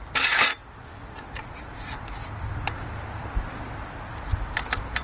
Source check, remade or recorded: remade